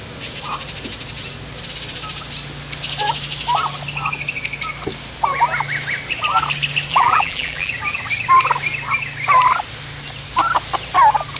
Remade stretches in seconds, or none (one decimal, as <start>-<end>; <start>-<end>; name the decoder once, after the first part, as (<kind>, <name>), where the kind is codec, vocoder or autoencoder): 6.9-7.7 (vocoder, BigVGAN v2)